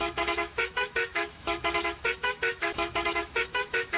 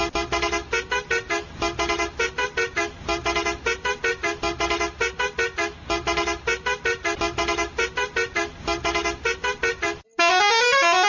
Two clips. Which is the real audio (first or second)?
second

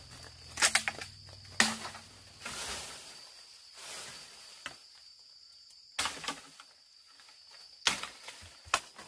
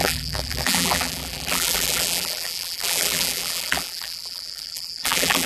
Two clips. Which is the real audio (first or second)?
first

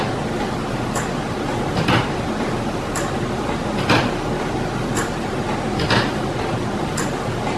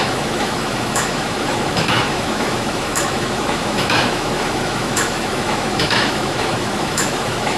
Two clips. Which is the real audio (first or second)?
first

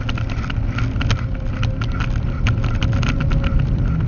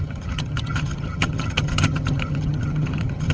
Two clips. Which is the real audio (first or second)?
first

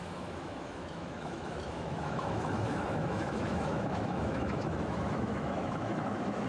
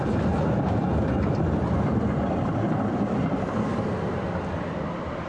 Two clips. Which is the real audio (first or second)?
second